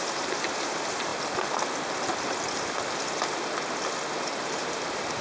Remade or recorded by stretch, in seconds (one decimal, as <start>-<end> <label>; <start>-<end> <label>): 0.0-1.1 remade; 1.1-4.2 recorded; 4.2-5.2 remade